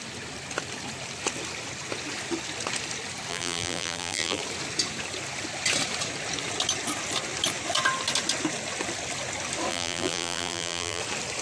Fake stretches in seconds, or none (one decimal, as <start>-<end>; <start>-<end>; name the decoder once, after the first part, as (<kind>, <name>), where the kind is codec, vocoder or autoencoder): 3.3-4.4 (vocoder, BigVGAN v2); 9.7-11.0